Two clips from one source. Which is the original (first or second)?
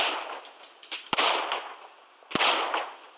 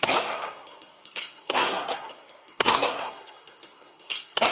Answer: first